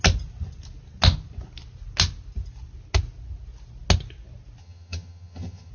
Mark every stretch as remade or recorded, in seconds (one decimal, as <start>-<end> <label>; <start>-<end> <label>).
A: 0.0-4.6 recorded; 4.6-5.7 remade